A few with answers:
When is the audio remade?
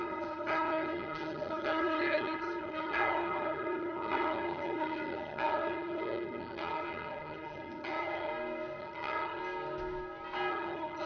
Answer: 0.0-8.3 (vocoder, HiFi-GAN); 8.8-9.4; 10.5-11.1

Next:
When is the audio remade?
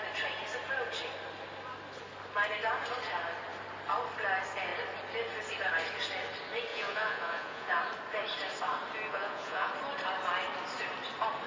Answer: 6.7-7.8 (vocoder, Vocos); 9.1-9.7